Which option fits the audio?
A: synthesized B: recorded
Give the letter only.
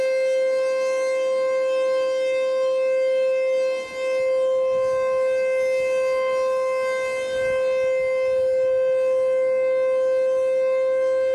B